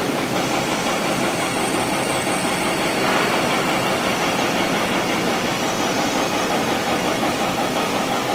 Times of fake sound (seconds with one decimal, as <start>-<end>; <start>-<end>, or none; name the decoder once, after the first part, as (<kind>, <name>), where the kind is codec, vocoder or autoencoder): 6.8-8.3 (autoencoder, DAC-VAE)